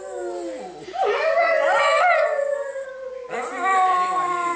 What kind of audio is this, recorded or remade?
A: recorded